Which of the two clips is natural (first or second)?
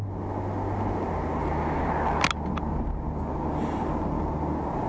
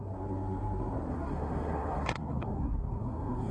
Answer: first